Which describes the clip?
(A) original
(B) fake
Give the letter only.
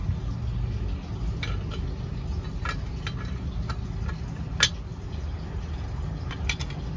A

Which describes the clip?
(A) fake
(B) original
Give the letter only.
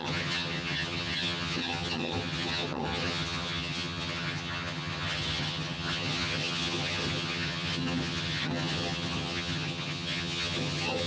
A